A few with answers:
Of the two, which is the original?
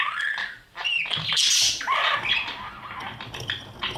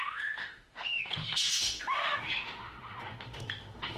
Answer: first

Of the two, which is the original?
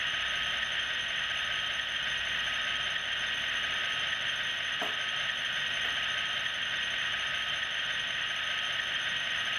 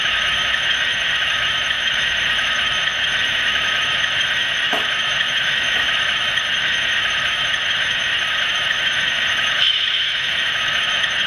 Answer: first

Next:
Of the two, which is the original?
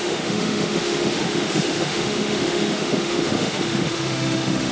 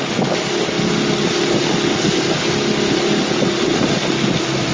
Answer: second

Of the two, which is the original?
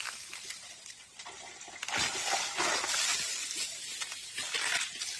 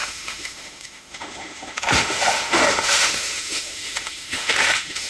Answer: first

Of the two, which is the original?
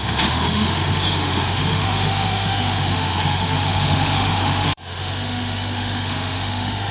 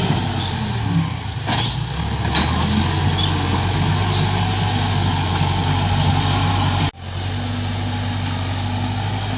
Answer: second